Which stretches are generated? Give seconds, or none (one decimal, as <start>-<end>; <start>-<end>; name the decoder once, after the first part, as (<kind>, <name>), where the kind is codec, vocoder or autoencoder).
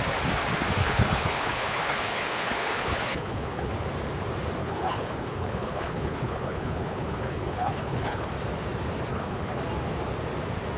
0.8-3.7 (codec, HILCodec); 4.6-8.3; 9.1-9.6